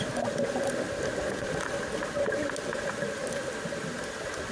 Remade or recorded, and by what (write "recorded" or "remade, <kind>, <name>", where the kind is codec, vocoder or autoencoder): recorded